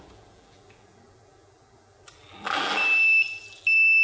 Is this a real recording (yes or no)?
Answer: no